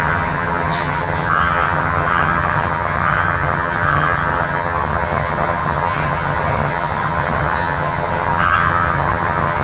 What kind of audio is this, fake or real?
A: fake